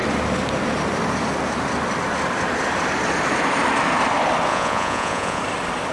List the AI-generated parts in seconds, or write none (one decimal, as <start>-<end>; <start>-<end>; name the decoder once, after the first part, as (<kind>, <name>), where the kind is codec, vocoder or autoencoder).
4.5-5.4 (vocoder, Vocos)